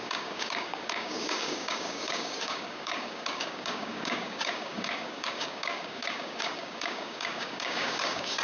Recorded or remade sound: remade